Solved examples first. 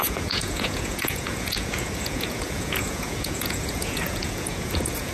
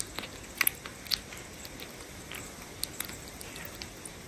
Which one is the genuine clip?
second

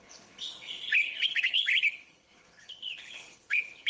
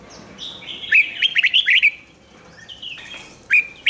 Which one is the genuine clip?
second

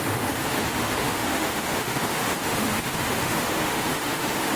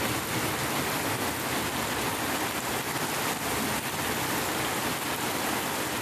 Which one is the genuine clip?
second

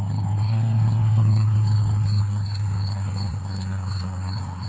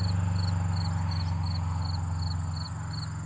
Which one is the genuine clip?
second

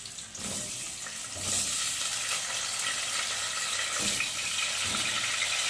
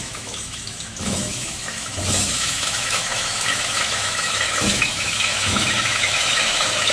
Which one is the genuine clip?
first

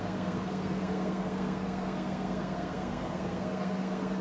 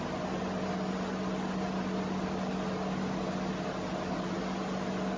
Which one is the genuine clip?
second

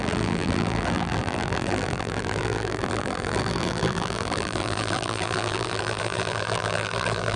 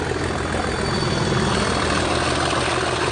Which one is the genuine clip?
second